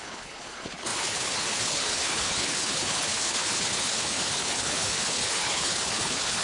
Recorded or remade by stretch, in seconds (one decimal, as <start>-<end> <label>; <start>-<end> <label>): 0.0-6.4 remade